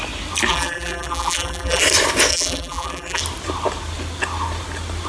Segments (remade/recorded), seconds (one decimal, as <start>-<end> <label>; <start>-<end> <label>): 0.0-0.5 recorded; 0.5-1.8 remade; 1.8-2.3 recorded; 2.3-3.2 remade; 3.2-5.1 recorded